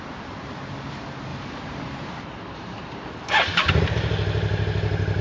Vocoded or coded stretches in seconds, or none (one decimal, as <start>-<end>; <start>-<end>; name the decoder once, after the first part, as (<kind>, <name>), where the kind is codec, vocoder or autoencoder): 1.3-3.7 (vocoder, BigVGAN v2)